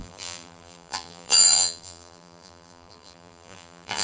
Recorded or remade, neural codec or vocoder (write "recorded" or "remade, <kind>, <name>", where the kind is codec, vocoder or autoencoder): remade, vocoder, BigVGAN v2